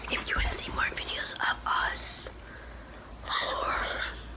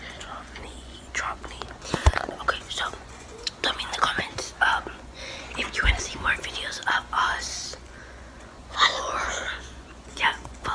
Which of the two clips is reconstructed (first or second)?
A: second